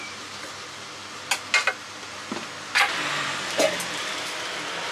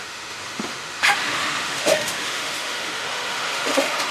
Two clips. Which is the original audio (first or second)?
first